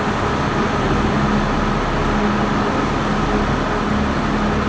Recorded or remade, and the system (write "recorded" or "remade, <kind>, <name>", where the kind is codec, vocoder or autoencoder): recorded